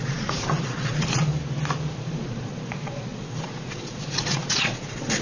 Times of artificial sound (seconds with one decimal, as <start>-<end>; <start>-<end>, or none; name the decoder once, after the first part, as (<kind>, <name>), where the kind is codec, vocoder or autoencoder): 0.0-1.3 (vocoder, Vocos); 2.0-5.2